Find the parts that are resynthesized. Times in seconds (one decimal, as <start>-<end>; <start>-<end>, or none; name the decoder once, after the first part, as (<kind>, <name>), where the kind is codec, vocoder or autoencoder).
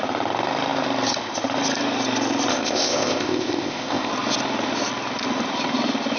2.5-4.1 (codec, ZipCodec)